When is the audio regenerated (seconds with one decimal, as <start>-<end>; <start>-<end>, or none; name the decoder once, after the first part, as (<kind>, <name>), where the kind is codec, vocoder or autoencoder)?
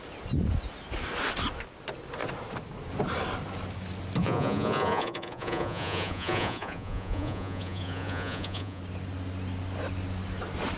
4.2-8.8 (vocoder, Vocos)